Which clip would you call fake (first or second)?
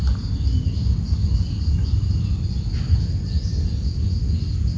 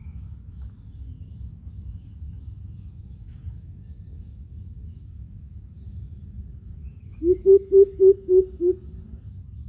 second